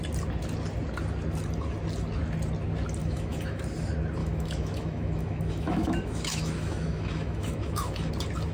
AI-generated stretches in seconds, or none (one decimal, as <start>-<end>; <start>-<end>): 3.0-3.6; 4.2-8.1